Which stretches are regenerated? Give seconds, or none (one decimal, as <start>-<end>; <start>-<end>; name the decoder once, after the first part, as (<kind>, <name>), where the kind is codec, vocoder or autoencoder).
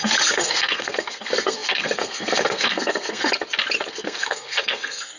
0.0-3.3 (codec, SNAC); 3.9-5.2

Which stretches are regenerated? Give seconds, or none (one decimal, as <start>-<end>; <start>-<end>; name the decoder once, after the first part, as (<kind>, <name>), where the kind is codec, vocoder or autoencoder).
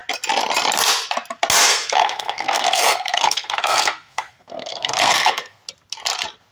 1.7-5.6 (codec, SNAC)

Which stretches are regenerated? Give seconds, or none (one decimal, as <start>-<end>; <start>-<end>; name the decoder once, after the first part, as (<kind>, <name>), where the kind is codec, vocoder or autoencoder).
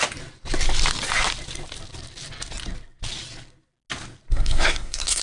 4.3-5.2 (codec, SNAC)